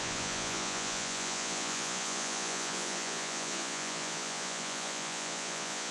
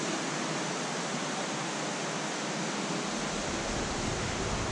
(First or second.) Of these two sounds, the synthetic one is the first